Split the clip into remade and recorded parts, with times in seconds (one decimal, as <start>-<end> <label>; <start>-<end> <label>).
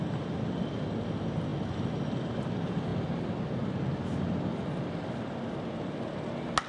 0.0-6.7 recorded